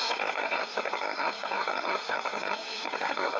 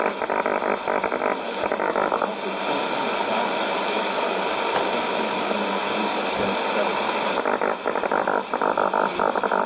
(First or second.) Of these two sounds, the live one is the second